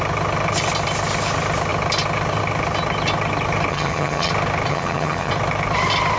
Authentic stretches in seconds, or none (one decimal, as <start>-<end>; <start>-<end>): 0.0-3.7; 4.3-4.7; 5.3-6.2